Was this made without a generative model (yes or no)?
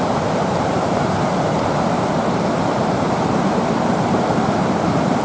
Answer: no